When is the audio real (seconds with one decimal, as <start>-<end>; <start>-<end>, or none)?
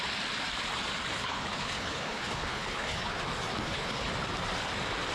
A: 0.0-1.1; 3.2-3.6; 4.1-5.1